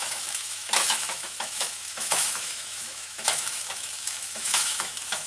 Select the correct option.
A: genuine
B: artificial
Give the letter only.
B